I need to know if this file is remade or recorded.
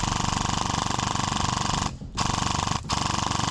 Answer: recorded